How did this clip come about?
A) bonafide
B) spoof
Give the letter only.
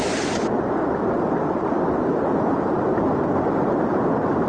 B